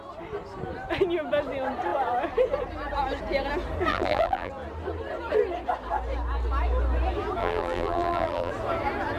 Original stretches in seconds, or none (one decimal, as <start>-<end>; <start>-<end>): 0.0-3.9; 4.5-7.4; 8.5-9.2